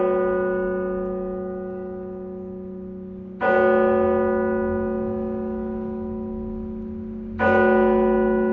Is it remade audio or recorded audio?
recorded